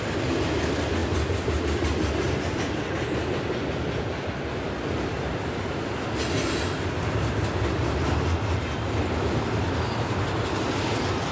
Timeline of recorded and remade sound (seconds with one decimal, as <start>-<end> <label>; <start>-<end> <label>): 0.0-11.3 recorded